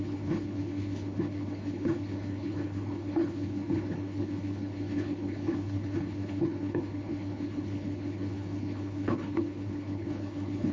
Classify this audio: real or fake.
fake